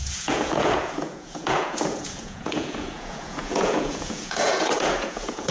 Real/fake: fake